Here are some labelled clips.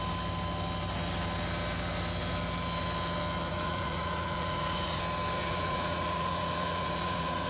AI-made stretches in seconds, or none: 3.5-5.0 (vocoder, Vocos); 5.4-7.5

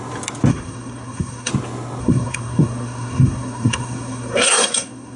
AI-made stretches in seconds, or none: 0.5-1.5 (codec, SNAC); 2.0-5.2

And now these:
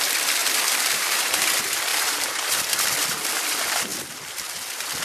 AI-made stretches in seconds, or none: 0.4-1.4 (vocoder, BigVGAN v2); 1.9-2.7; 3.9-4.5

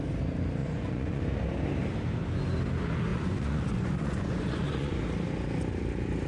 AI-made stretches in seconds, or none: 0.6-1.2 (vocoder, Vocos); 3.1-4.9